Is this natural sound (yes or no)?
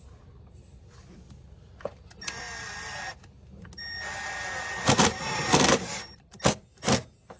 yes